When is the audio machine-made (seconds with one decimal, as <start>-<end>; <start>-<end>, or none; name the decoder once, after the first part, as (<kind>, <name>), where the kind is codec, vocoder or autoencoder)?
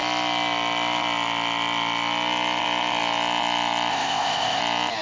3.9-4.6 (codec, ZipCodec)